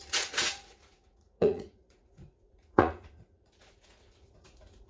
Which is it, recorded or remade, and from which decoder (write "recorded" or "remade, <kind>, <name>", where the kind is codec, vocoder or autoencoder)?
remade, vocoder, Vocos